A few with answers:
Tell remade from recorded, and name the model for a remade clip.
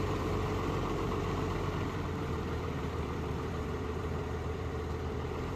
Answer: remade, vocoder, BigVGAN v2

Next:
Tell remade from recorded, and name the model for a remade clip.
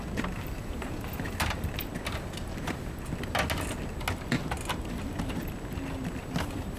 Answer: recorded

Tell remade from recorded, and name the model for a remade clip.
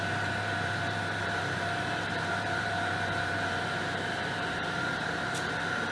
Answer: remade, vocoder, BigVGAN v2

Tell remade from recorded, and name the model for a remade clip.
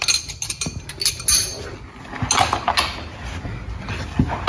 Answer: recorded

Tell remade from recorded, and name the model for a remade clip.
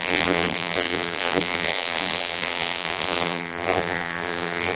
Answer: remade, vocoder, BigVGAN v2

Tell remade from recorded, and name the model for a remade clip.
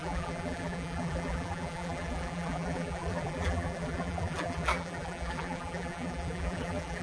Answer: remade, vocoder, BigVGAN v2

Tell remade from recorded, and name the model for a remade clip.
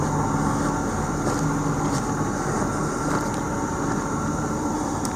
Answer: recorded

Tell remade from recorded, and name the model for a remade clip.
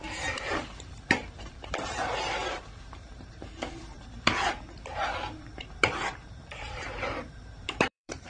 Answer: remade, vocoder, BigVGAN v2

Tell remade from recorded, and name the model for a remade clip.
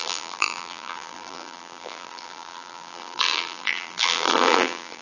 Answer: remade, vocoder, BigVGAN v2